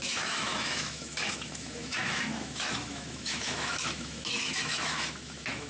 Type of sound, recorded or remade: remade